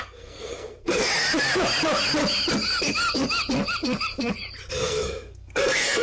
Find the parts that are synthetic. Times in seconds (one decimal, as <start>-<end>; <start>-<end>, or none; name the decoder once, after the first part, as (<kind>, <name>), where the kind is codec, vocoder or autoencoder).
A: 0.0-1.1 (codec, SNAC); 4.7-6.0